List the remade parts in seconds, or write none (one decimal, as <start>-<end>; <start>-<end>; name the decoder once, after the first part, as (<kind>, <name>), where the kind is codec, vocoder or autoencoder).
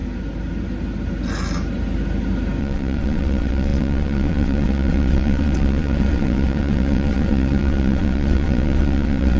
2.6-9.4 (vocoder, WaveNeXt)